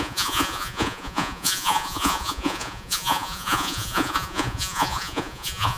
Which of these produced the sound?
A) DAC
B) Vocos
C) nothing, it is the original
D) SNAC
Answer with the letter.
B